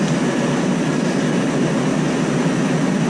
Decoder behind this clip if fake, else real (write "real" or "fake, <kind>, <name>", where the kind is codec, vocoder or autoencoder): real